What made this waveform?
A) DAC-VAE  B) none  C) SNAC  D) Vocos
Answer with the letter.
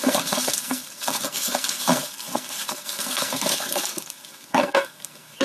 C